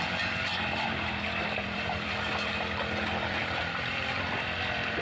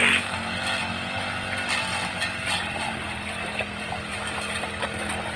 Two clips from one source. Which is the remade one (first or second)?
first